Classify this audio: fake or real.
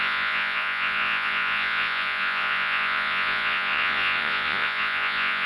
fake